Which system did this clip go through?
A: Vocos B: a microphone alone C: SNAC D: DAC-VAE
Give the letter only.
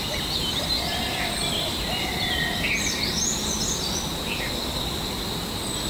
B